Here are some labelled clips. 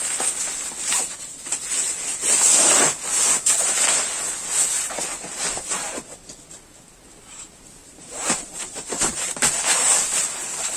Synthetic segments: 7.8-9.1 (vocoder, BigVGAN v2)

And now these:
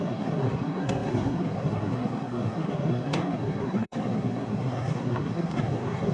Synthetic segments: 0.0-6.1 (codec, SNAC)

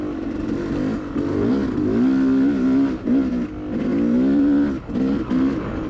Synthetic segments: none

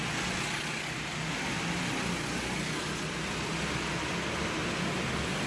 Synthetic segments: none

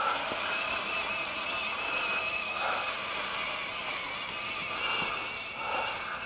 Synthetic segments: none